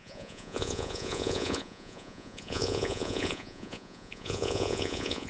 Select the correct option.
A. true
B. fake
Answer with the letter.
B